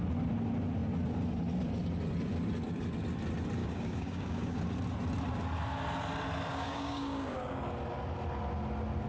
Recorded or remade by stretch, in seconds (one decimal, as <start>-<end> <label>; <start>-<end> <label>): 0.0-3.6 recorded; 3.6-4.6 remade; 4.6-6.5 recorded; 6.5-7.6 remade; 7.6-9.1 recorded